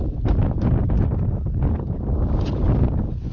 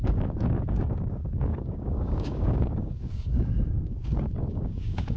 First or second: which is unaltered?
first